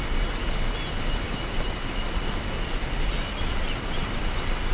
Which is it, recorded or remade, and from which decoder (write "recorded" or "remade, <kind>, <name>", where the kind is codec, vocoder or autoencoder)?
recorded